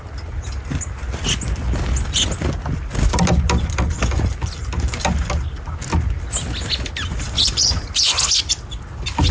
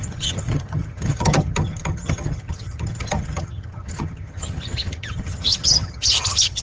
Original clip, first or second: first